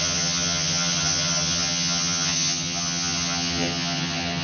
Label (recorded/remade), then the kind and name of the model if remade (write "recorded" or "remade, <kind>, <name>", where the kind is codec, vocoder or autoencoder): remade, vocoder, HiFi-GAN